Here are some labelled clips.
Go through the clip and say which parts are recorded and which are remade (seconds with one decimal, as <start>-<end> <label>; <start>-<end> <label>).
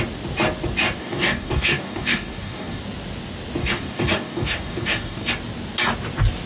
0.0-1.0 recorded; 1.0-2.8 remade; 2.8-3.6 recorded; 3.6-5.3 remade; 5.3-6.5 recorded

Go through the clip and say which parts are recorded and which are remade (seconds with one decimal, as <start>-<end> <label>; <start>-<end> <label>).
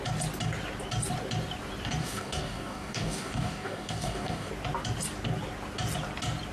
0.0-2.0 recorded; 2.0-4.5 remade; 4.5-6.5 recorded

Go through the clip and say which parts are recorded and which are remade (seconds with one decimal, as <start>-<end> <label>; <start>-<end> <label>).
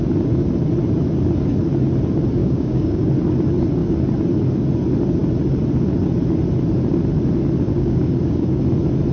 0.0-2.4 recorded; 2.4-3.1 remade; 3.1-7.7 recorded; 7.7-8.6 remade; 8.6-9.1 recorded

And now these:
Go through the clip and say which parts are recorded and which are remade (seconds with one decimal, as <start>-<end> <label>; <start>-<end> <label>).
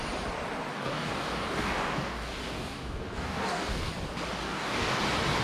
0.0-0.7 recorded; 0.7-3.9 remade; 3.9-4.4 recorded; 4.4-5.0 remade; 5.0-5.4 recorded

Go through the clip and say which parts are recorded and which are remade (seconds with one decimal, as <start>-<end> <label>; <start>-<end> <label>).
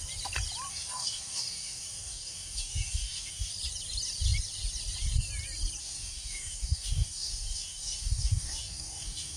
0.0-0.7 recorded; 0.7-3.5 remade; 3.5-5.8 recorded; 5.8-9.4 remade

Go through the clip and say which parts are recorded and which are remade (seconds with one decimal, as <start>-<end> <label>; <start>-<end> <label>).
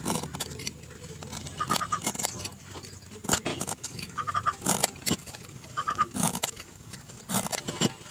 0.0-3.5 recorded; 3.5-4.3 remade; 4.3-5.2 recorded; 5.2-7.2 remade; 7.2-8.1 recorded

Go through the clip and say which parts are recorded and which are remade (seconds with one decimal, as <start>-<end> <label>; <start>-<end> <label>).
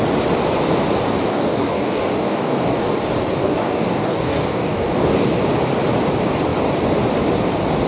0.0-1.3 recorded; 1.3-3.0 remade; 3.0-3.4 recorded; 3.4-5.4 remade; 5.4-7.9 recorded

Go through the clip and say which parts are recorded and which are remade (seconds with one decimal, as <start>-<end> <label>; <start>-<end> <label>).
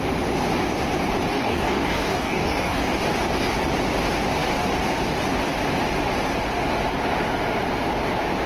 0.0-1.3 recorded; 1.3-2.9 remade; 2.9-8.5 recorded